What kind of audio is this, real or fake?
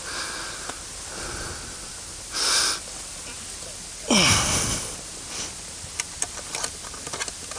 real